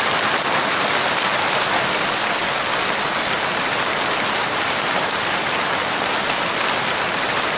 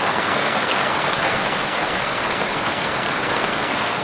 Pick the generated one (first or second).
second